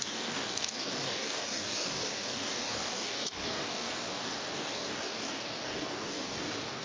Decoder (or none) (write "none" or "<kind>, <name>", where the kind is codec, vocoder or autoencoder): codec, DAC